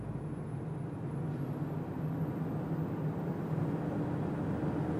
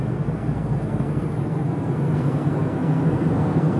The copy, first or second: second